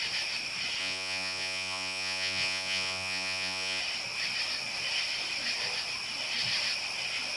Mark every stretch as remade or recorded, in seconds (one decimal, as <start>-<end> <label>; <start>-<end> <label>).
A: 0.0-0.8 recorded; 0.8-3.8 remade; 3.8-7.4 recorded